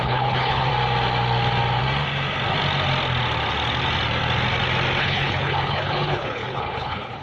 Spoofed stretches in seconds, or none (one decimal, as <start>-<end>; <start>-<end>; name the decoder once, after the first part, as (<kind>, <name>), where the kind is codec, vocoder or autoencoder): 0.0-0.7 (codec, HILCodec); 5.0-7.2